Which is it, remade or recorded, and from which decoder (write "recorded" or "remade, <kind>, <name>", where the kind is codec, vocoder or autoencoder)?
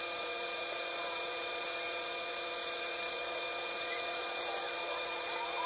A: remade, vocoder, Vocos